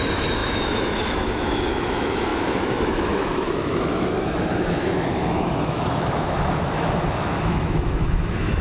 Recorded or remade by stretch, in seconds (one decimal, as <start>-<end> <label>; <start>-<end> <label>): 0.0-8.6 remade